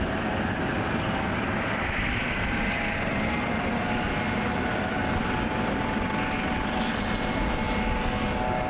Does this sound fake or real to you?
real